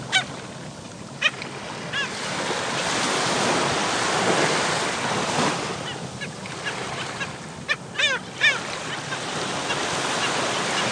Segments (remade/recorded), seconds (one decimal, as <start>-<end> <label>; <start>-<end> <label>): 0.0-10.9 recorded